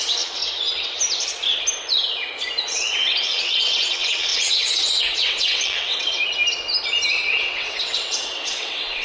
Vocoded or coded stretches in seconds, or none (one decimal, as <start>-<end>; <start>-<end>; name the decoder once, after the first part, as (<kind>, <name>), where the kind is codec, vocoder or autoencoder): 0.0-0.4 (vocoder, WaveNeXt); 2.6-6.2; 7.1-9.0